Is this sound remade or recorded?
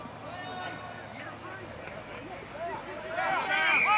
recorded